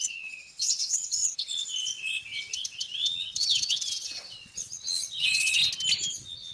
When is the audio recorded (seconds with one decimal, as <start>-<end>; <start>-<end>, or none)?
5.6-6.1

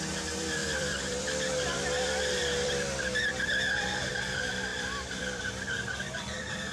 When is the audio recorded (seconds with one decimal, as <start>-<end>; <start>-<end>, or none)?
none

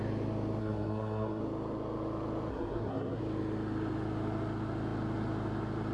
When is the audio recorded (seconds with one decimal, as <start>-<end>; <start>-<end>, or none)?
0.0-0.6; 1.4-2.5; 3.2-5.9

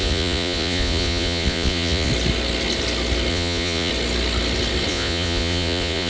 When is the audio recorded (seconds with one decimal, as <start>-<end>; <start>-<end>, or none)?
2.1-3.3; 3.9-4.9

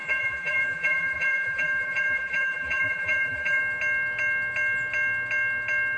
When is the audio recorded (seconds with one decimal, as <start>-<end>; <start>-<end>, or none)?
3.6-6.0